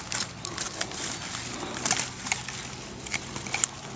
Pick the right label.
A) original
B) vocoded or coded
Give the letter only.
A